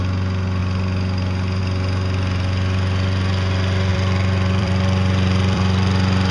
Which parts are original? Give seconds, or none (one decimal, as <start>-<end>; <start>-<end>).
0.0-3.9